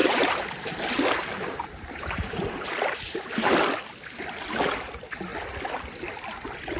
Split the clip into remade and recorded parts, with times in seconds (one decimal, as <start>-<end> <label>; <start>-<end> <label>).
0.0-3.4 remade; 3.4-6.8 recorded